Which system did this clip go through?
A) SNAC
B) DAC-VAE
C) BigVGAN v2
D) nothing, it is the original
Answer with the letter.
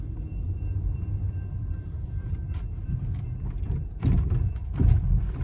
C